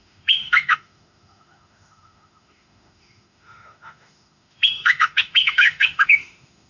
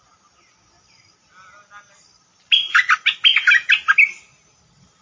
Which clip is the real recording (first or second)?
second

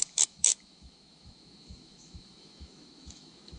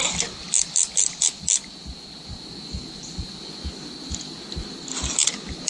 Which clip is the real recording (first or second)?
second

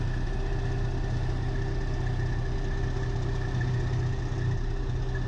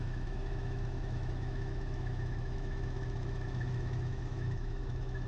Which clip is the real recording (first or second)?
first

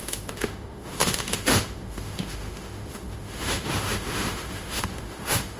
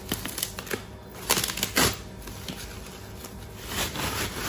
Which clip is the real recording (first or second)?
second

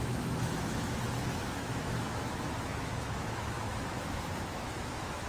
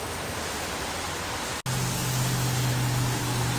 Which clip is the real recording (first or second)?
second